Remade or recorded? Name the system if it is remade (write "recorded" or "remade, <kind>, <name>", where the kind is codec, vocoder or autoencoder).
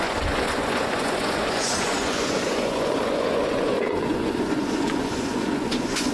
remade, vocoder, Vocos